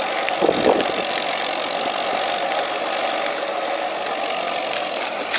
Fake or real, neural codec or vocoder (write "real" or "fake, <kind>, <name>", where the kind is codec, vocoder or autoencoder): real